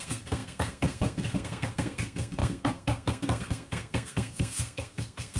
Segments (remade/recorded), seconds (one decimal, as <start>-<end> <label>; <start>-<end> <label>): 0.0-5.4 remade